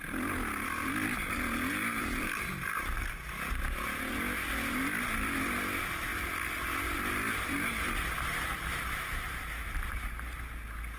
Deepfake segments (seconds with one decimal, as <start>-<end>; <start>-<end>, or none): 1.9-3.1; 8.7-10.1